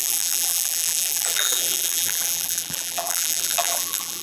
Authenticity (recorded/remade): remade